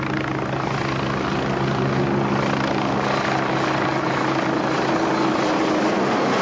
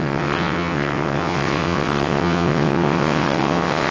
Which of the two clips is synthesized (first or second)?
second